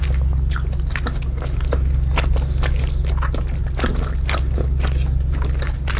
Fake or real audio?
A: real